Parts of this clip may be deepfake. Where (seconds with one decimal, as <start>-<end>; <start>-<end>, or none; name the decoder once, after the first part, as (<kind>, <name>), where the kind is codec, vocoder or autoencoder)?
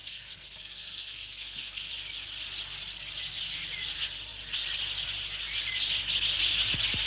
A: 0.0-1.9 (codec, SNAC)